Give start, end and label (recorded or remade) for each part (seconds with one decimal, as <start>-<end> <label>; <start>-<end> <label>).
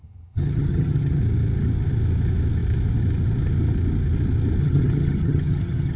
0.0-1.2 remade; 1.2-4.6 recorded; 4.6-6.0 remade